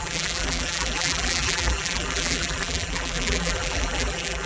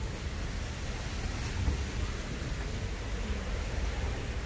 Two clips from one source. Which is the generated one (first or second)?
first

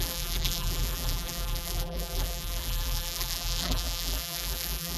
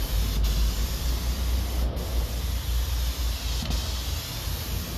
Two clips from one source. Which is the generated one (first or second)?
first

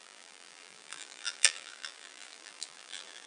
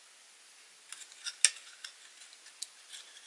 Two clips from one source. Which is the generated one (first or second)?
first